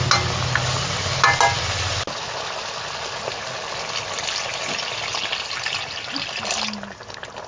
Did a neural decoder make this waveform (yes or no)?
no